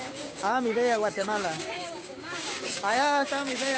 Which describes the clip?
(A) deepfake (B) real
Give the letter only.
A